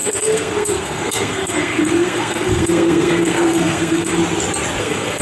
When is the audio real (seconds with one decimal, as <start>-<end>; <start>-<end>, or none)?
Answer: 4.2-4.8